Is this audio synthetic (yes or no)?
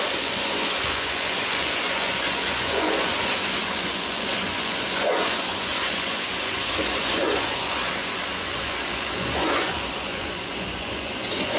yes